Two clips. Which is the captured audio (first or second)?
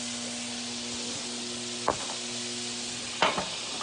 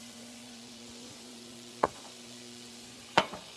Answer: first